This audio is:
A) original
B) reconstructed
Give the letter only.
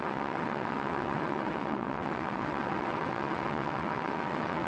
B